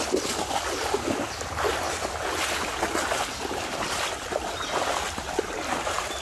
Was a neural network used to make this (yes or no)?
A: no